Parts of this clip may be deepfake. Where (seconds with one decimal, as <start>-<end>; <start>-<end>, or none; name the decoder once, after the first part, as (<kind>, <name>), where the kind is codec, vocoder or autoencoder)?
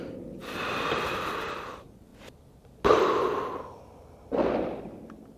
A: none